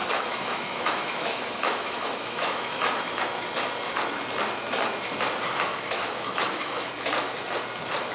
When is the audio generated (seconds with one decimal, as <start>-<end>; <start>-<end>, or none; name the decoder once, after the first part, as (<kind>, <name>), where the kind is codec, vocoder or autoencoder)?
0.0-3.1 (autoencoder, DAC-VAE); 5.7-6.9

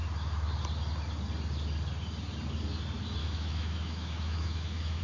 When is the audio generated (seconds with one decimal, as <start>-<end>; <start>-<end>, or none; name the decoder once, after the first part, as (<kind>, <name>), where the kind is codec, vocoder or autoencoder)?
3.2-5.0 (autoencoder, DAC-VAE)

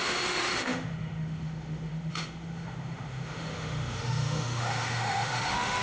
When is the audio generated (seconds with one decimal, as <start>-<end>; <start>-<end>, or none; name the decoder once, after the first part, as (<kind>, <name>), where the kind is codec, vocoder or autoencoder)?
0.0-5.8 (autoencoder, DAC-VAE)

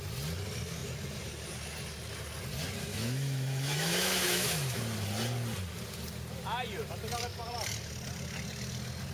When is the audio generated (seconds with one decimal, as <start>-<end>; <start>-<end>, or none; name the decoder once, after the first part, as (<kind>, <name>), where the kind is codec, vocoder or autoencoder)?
2.9-4.8 (autoencoder, DAC-VAE)

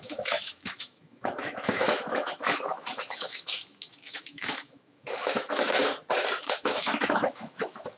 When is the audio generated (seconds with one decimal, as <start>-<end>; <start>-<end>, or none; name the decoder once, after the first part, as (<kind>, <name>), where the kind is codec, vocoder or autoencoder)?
0.0-5.8 (autoencoder, DAC-VAE); 6.4-8.0

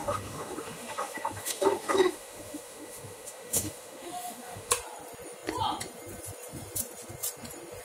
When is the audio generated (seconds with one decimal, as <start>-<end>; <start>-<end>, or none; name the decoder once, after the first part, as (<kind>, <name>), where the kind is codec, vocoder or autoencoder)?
0.0-4.7 (autoencoder, DAC-VAE)

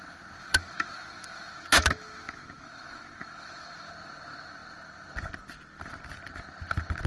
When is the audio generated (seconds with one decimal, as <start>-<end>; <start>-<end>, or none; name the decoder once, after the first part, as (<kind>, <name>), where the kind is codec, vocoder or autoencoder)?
0.4-3.9 (autoencoder, DAC-VAE)

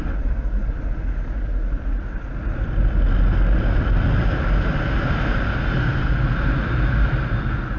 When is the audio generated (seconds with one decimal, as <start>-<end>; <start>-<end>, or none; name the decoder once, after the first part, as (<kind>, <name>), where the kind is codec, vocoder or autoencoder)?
none